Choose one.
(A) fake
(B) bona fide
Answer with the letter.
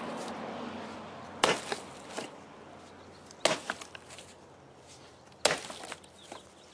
B